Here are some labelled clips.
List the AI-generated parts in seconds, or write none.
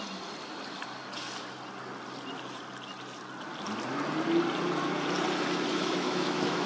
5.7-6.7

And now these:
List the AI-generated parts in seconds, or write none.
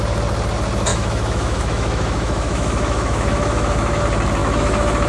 0.9-4.0; 4.4-5.1